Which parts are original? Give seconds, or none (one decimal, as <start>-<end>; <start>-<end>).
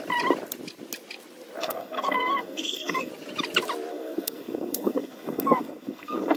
0.0-1.6; 3.1-3.9